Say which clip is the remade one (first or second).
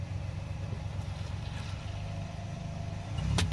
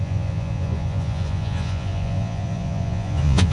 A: second